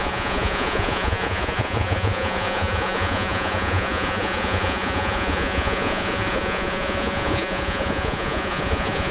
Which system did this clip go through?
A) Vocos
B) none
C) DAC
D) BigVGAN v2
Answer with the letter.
A